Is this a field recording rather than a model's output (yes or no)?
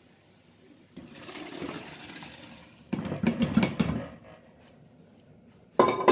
yes